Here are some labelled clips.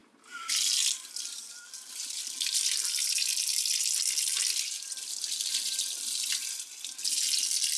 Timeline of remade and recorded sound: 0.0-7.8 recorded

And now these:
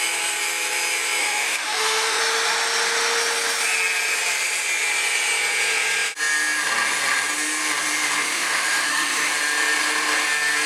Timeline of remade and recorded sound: 0.0-1.2 recorded; 1.2-2.2 remade; 2.2-8.2 recorded; 8.2-9.3 remade; 9.3-10.7 recorded

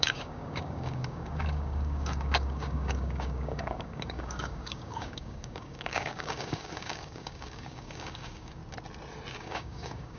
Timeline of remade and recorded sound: 0.0-8.6 remade; 8.6-9.3 recorded; 9.3-10.2 remade

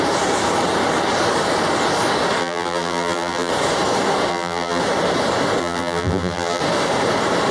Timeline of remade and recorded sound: 0.0-2.4 recorded; 2.4-3.5 remade; 3.5-4.3 recorded; 4.3-4.8 remade; 4.8-5.6 recorded; 5.6-6.6 remade; 6.6-7.5 recorded